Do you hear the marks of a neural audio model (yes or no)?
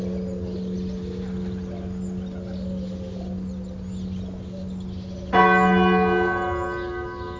no